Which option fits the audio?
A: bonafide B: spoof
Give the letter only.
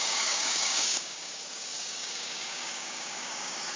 B